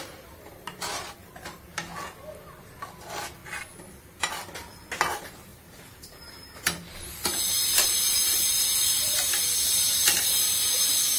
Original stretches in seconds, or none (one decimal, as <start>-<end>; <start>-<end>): 1.9-3.0; 3.4-5.1